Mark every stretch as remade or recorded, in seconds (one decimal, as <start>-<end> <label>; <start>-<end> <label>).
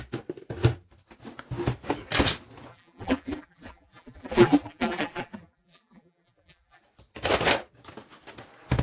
0.0-2.7 recorded; 2.7-6.8 remade; 6.8-8.8 recorded